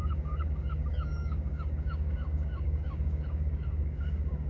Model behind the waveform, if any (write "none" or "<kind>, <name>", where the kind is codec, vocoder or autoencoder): codec, DAC